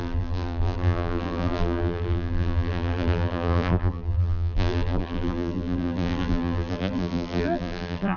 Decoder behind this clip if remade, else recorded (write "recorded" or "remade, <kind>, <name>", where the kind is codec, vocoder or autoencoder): remade, vocoder, BigVGAN v2